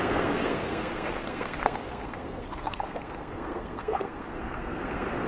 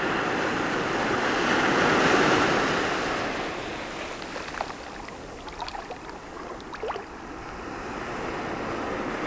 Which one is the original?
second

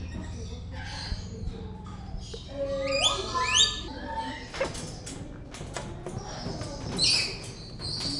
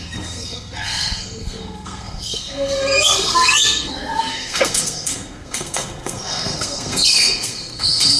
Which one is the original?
first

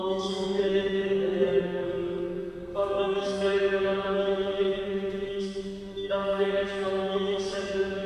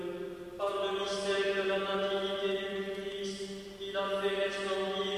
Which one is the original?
second